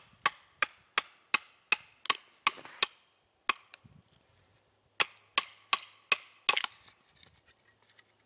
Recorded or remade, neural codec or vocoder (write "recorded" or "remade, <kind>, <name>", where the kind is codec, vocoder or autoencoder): recorded